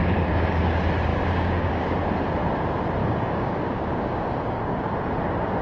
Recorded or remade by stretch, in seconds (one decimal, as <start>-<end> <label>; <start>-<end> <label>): 0.0-0.6 remade; 0.6-1.1 recorded; 1.1-1.9 remade; 1.9-3.0 recorded; 3.0-4.9 remade; 4.9-5.6 recorded